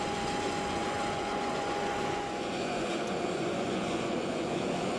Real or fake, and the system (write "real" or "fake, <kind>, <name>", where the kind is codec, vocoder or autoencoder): fake, vocoder, Vocos